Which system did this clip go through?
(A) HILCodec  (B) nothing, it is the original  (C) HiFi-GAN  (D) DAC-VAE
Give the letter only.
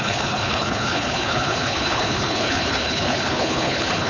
A